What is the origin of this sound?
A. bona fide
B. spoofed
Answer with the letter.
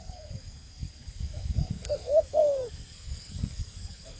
B